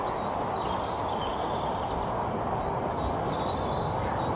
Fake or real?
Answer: real